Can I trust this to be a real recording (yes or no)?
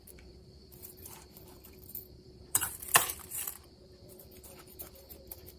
no